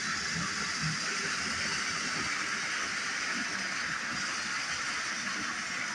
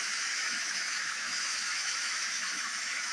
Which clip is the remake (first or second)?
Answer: second